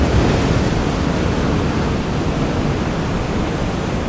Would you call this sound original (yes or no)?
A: yes